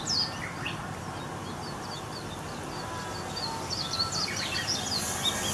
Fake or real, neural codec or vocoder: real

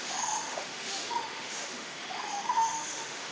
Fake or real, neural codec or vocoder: fake, autoencoder, DAC-VAE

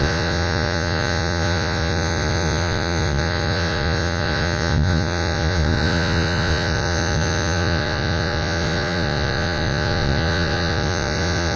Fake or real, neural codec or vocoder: fake, vocoder, Vocos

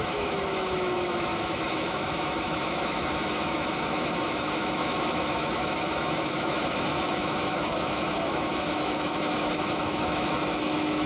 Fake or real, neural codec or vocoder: fake, autoencoder, DAC-VAE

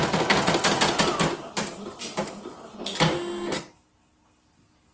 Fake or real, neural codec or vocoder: real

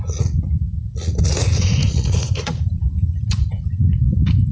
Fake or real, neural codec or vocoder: fake, vocoder, Vocos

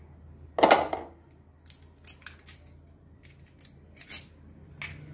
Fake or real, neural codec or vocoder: real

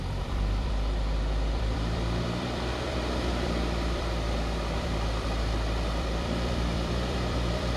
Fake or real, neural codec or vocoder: fake, vocoder, BigVGAN v2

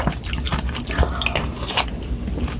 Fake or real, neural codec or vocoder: real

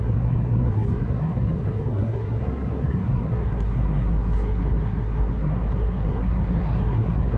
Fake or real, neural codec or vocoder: fake, codec, SNAC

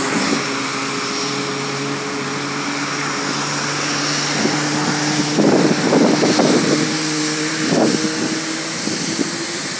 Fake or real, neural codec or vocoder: real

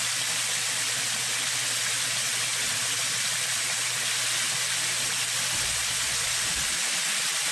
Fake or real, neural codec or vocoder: real